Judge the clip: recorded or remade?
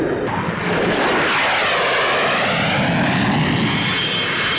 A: recorded